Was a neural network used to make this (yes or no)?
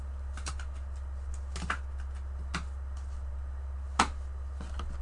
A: no